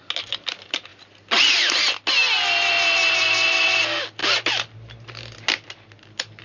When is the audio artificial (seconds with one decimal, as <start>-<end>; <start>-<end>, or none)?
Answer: none